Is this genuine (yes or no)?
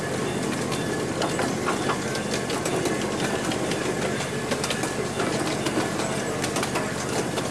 yes